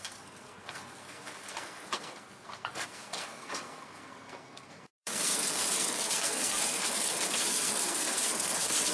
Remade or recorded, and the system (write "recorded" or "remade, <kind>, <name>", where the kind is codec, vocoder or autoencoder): remade, codec, SNAC